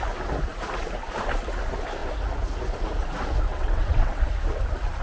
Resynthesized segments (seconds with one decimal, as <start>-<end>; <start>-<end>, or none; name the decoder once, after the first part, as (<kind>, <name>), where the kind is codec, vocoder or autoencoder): 3.5-4.2 (vocoder, WaveNeXt)